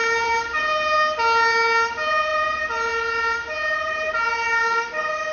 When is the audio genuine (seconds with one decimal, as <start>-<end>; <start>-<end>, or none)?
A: 0.6-5.3